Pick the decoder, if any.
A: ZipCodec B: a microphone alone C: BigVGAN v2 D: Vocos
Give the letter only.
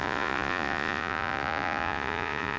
D